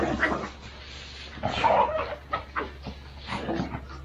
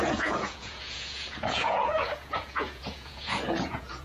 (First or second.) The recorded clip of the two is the first